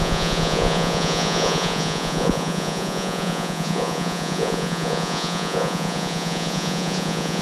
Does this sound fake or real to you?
fake